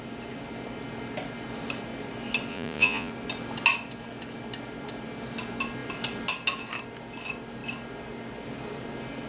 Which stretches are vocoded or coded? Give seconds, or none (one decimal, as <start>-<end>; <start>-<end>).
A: 2.5-3.1